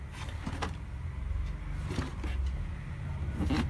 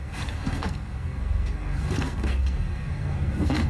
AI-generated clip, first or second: second